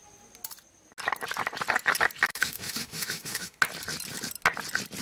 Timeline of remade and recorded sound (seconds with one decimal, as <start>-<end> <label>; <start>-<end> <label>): 0.0-2.3 recorded; 2.3-3.6 remade; 3.6-5.0 recorded